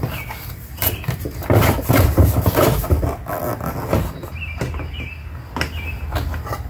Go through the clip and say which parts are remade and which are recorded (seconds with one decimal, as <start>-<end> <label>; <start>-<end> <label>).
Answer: 0.0-6.7 recorded